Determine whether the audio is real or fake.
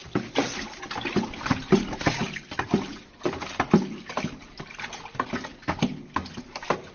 real